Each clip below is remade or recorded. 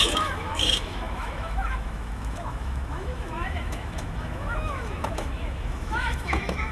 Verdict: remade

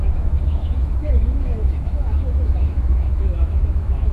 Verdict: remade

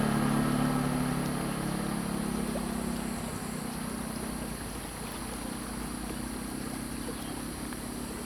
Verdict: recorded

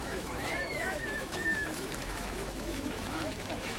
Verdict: remade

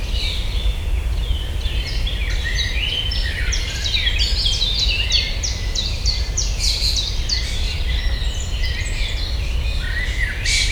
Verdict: recorded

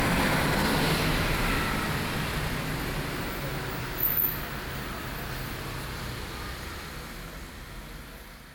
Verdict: recorded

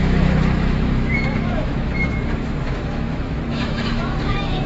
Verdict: remade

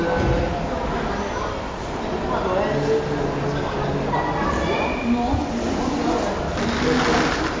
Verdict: recorded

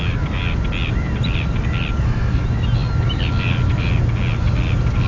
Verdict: recorded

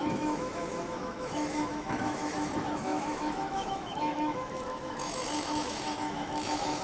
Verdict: remade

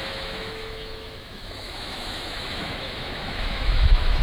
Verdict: remade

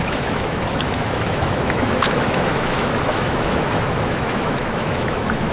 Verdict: remade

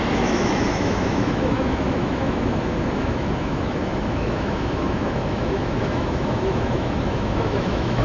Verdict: remade